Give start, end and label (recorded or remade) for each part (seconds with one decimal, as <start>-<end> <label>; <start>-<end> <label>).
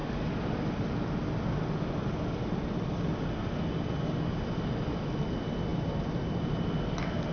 0.0-7.3 recorded